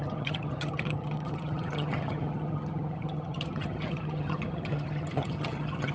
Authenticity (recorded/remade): remade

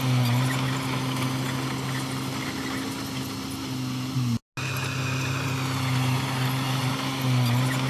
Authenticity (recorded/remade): recorded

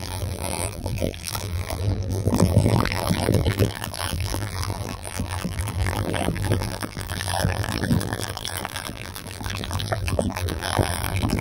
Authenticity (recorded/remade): remade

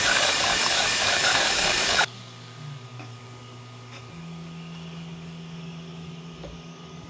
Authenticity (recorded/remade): remade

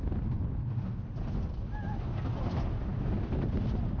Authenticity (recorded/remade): recorded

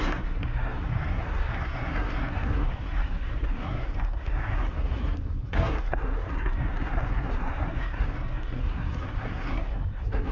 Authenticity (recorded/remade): remade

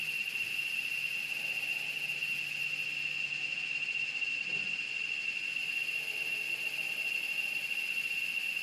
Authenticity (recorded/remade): recorded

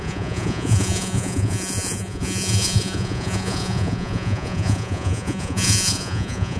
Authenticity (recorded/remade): remade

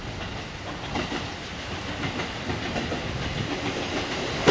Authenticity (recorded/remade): recorded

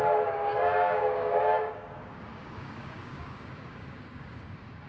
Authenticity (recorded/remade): remade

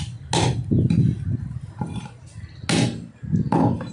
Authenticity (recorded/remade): recorded